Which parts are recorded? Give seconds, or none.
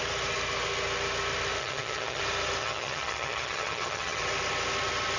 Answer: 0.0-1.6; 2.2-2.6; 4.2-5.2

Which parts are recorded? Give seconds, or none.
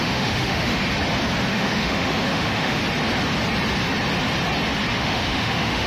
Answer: 0.8-1.5; 2.8-4.9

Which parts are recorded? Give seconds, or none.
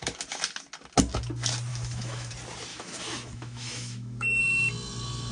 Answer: 0.0-1.7; 2.3-2.7; 4.4-5.3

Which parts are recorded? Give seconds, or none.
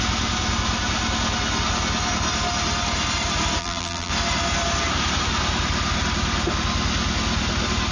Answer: 0.0-3.6; 4.1-7.9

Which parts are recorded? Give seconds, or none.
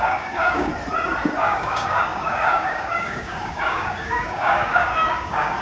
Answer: 0.7-1.4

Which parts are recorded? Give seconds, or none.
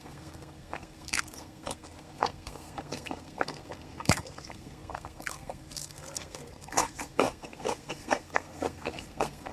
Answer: none